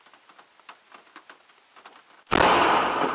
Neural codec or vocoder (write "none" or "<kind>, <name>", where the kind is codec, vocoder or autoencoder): none